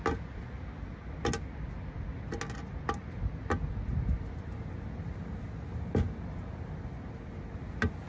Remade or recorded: recorded